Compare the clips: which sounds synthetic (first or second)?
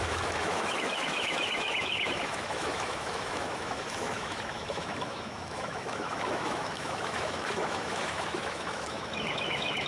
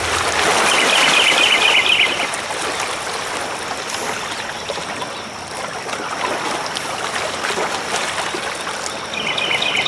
first